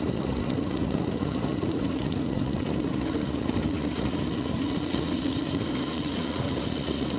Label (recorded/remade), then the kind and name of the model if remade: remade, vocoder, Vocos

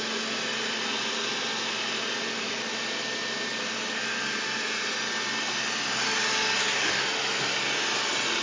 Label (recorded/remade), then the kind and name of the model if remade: recorded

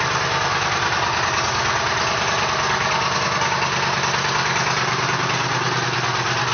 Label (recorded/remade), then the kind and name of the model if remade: recorded